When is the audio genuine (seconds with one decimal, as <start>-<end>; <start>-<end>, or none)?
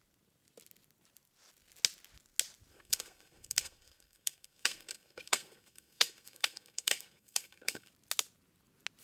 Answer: 0.0-2.7; 7.9-9.0